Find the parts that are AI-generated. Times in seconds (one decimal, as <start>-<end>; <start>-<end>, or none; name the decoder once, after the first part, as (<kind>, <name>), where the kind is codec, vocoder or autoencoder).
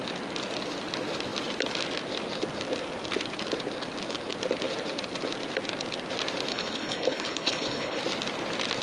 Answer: 6.5-8.0 (codec, HILCodec)